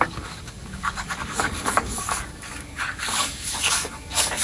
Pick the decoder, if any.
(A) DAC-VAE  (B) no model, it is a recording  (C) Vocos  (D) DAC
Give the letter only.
D